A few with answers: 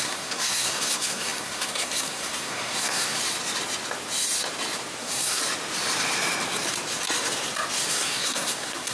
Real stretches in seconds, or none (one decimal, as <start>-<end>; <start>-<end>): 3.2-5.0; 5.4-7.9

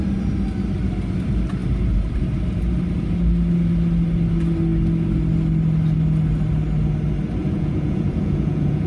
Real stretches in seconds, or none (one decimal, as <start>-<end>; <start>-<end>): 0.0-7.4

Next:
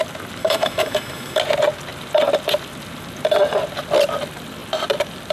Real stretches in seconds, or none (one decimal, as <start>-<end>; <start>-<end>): 0.0-0.4; 1.4-5.3